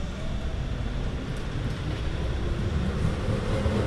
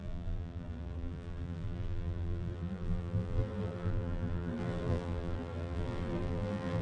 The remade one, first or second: second